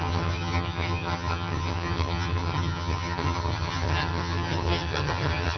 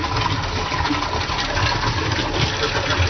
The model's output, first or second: first